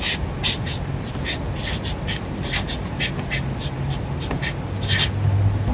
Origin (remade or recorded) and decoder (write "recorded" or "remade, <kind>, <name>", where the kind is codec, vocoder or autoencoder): recorded